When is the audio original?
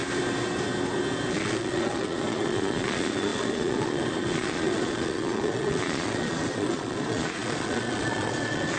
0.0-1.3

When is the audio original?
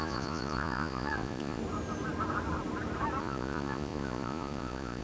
1.6-3.2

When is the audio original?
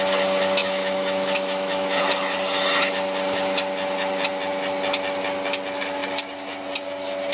0.0-0.6; 2.0-7.3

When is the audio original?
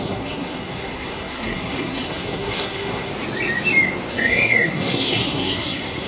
3.1-4.1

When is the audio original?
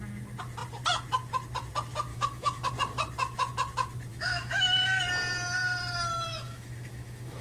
0.0-2.1; 2.7-4.1; 5.0-6.3